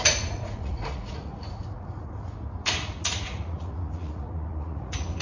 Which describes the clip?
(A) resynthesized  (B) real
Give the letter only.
A